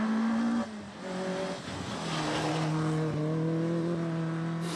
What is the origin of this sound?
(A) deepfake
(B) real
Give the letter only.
B